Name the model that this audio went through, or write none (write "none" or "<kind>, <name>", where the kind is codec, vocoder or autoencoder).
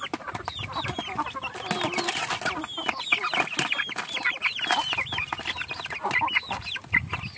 none